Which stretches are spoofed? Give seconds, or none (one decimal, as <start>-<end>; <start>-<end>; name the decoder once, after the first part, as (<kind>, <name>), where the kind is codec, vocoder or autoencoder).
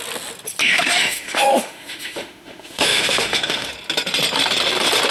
0.6-3.7 (autoencoder, DAC-VAE)